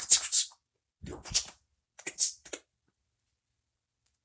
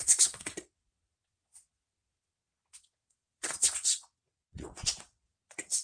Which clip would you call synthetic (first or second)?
second